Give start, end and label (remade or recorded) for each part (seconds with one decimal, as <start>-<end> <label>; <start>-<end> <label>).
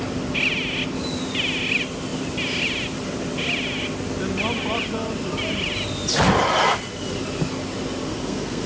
0.0-8.1 recorded; 8.1-8.7 remade